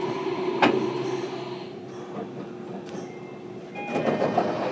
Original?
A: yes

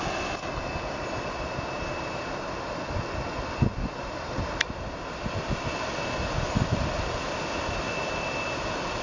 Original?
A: yes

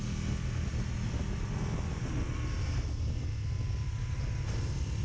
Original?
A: yes